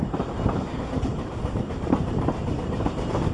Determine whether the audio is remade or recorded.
remade